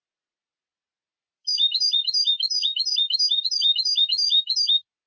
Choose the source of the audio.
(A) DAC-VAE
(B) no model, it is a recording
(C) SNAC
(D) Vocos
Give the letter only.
B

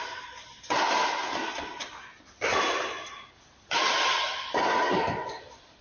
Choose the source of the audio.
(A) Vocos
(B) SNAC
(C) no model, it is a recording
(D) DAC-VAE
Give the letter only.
C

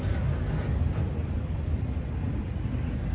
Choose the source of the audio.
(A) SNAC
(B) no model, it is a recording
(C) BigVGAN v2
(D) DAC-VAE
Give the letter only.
B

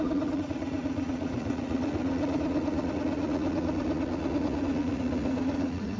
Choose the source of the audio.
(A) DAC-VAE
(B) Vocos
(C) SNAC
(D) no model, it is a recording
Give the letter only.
B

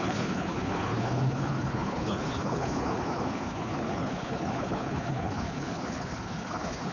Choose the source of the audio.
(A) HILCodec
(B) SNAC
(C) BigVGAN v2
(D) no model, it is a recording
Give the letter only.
A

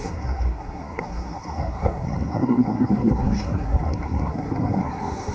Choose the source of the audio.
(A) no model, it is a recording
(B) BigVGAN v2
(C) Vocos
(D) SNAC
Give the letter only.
D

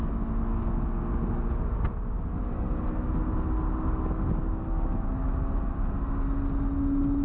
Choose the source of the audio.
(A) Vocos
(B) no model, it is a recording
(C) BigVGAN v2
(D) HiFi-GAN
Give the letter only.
B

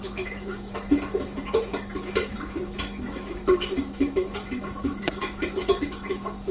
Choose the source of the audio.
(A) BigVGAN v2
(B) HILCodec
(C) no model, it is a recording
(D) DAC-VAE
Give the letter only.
D